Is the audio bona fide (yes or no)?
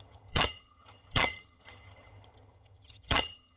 no